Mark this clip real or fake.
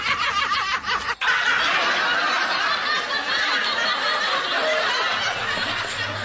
real